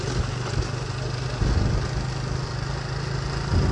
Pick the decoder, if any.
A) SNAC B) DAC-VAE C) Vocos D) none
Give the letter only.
D